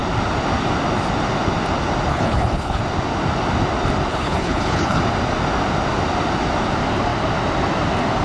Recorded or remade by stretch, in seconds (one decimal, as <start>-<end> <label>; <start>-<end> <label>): 0.0-2.1 recorded; 2.1-2.8 remade; 2.8-4.1 recorded; 4.1-5.0 remade; 5.0-8.2 recorded